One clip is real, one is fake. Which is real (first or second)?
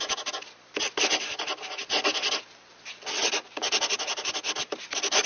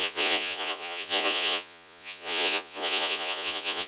first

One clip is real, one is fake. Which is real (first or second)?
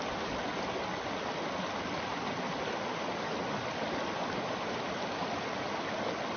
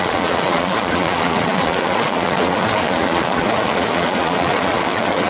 first